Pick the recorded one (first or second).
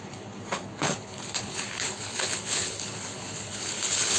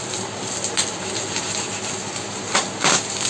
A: second